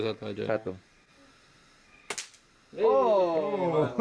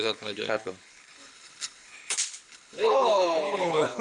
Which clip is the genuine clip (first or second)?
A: first